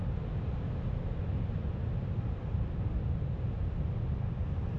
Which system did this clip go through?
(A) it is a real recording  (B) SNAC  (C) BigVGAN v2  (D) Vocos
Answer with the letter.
A